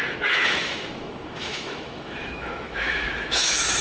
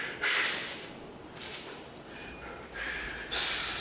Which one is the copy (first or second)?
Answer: first